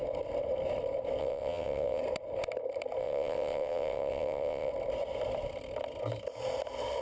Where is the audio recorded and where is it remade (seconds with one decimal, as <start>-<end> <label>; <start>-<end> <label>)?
0.0-1.2 recorded; 1.2-2.0 remade; 2.0-3.0 recorded; 3.0-4.7 remade; 4.7-7.0 recorded